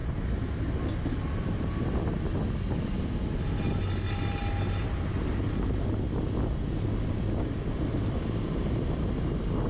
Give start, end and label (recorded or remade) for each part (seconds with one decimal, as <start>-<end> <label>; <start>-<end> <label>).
0.0-9.7 recorded